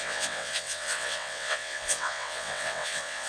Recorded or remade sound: remade